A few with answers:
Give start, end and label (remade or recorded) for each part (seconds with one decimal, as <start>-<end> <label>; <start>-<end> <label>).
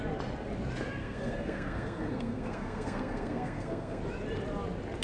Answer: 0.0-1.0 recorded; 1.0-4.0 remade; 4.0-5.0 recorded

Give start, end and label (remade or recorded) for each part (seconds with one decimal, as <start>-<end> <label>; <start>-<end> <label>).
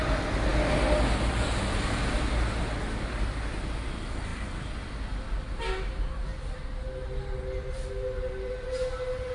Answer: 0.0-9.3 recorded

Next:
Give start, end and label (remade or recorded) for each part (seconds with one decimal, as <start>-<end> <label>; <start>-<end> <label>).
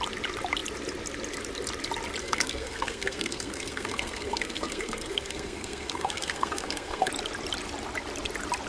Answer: 0.0-2.2 recorded; 2.2-7.1 remade; 7.1-8.7 recorded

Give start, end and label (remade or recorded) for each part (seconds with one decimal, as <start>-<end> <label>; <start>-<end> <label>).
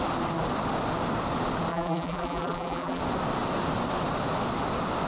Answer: 0.0-1.7 recorded; 1.7-3.0 remade; 3.0-5.1 recorded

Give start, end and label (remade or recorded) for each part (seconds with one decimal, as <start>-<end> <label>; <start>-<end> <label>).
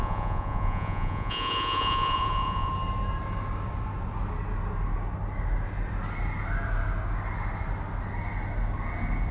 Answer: 0.0-2.7 remade; 2.7-9.3 recorded